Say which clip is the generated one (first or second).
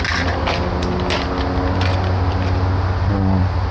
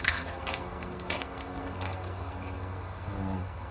second